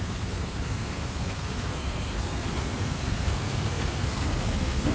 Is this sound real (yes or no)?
no